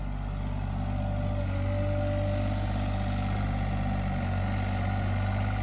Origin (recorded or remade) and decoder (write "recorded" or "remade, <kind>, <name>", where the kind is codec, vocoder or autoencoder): recorded